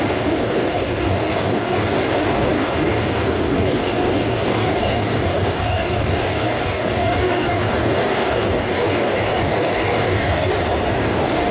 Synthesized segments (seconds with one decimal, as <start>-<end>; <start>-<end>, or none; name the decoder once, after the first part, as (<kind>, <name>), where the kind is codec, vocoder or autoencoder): 0.0-10.5 (codec, DAC); 11.0-11.5